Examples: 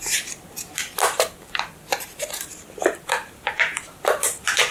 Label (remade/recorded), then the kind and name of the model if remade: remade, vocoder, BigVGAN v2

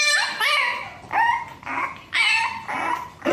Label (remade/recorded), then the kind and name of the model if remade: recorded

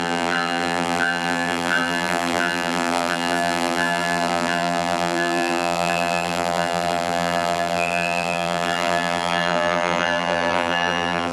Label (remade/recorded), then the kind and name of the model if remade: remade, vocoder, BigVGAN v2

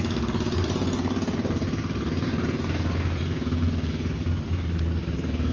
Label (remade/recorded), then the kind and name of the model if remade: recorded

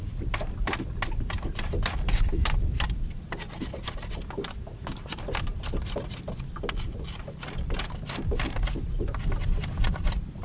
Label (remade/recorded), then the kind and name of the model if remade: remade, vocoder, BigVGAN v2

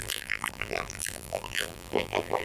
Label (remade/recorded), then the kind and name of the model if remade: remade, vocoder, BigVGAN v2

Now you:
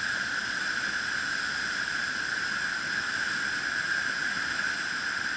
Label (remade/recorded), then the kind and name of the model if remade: recorded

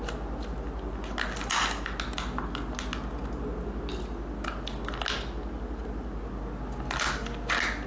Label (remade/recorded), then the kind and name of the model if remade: recorded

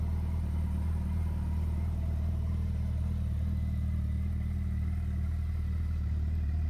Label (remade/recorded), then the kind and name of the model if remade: remade, vocoder, BigVGAN v2